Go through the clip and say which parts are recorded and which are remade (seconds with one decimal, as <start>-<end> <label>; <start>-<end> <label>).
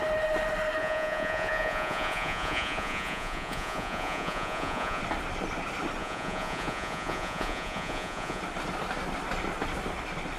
0.0-0.8 recorded; 0.8-5.0 remade; 5.0-6.0 recorded; 6.0-8.4 remade; 8.4-10.4 recorded